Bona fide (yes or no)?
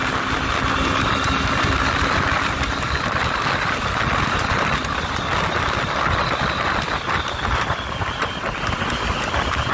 yes